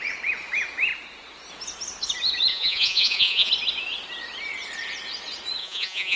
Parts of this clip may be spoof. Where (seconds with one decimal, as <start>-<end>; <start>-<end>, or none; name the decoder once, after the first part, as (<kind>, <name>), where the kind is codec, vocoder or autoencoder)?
2.5-3.5 (vocoder, Vocos); 5.6-6.2